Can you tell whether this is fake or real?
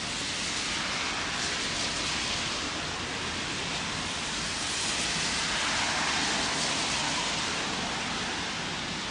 real